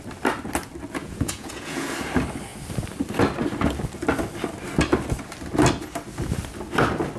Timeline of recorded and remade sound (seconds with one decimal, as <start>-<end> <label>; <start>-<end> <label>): 0.0-1.0 recorded; 1.0-1.9 remade; 1.9-7.2 recorded